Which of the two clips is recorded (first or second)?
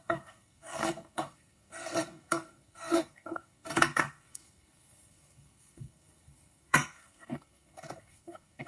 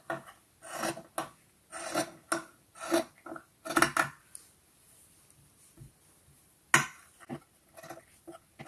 second